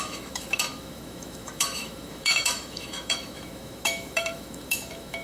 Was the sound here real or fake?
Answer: fake